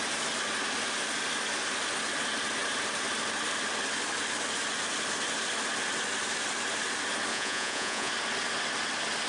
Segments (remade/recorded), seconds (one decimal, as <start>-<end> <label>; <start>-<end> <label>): 0.0-7.3 recorded; 7.3-8.1 remade; 8.1-9.3 recorded